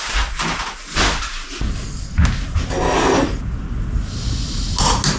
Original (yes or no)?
yes